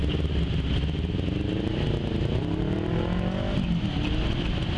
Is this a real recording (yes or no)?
yes